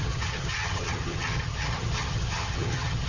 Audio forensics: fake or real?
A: fake